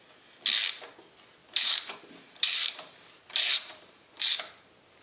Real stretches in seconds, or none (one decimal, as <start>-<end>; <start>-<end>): 0.0-1.4; 4.4-5.0